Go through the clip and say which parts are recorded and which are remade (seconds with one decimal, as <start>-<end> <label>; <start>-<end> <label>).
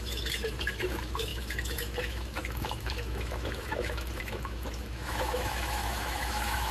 0.0-6.7 remade